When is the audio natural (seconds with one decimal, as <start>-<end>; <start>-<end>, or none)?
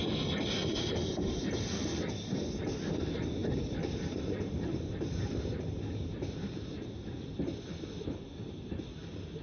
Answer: 0.0-3.4; 6.8-9.4